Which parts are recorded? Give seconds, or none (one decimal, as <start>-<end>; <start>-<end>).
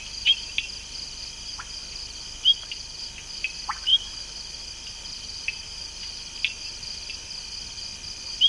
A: 0.0-8.5